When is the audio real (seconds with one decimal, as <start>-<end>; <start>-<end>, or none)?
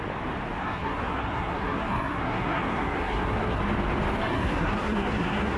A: 0.0-0.6; 3.6-4.3